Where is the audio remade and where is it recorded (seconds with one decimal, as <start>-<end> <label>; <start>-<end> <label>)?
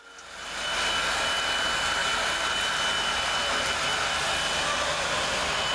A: 0.0-2.0 recorded; 2.0-2.8 remade; 2.8-5.7 recorded